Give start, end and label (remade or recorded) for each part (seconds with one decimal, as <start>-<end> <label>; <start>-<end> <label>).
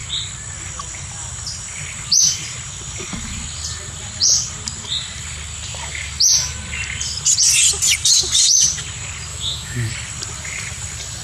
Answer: 0.0-9.3 recorded; 9.3-9.9 remade; 9.9-11.2 recorded